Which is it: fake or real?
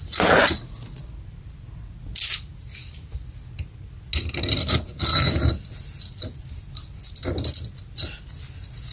real